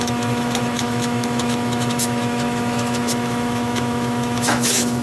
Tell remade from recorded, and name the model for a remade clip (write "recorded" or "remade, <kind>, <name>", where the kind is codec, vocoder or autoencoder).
remade, autoencoder, DAC-VAE